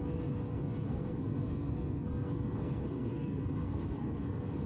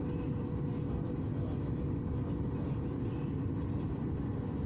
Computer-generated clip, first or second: first